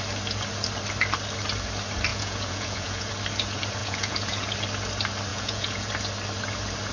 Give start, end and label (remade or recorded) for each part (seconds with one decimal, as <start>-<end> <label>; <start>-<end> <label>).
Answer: 0.0-2.1 recorded; 2.1-3.1 remade; 3.1-3.8 recorded; 3.8-4.5 remade; 4.5-5.3 recorded; 5.3-5.9 remade; 5.9-6.9 recorded